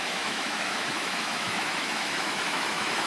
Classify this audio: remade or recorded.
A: remade